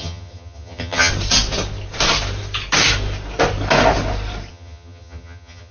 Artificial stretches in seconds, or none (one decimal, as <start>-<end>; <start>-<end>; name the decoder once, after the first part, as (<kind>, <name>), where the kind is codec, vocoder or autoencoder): 0.0-1.1 (vocoder, HiFi-GAN); 4.5-5.7